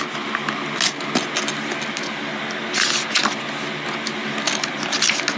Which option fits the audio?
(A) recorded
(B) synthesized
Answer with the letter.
A